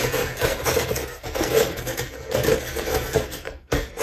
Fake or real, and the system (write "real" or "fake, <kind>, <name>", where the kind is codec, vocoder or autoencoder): fake, codec, SNAC